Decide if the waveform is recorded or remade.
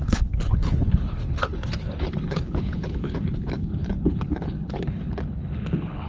remade